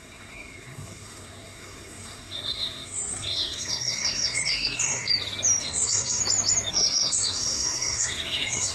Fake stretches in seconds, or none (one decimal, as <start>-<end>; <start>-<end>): 0.0-5.1; 5.6-6.2; 6.7-8.7